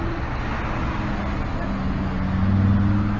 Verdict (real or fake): real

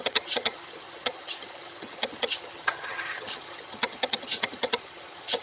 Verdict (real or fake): fake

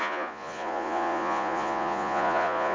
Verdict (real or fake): fake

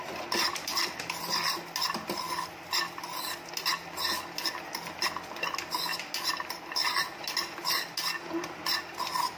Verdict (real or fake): real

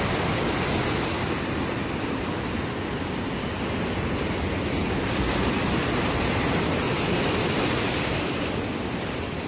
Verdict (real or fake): fake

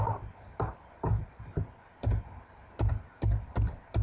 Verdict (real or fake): real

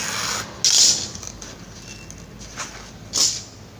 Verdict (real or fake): real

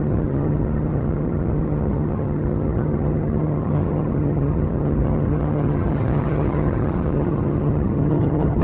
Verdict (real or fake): fake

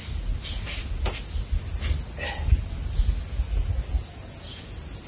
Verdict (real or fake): real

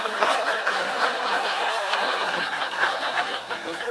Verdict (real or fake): fake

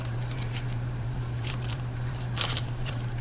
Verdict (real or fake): fake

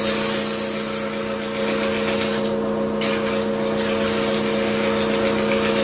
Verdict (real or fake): real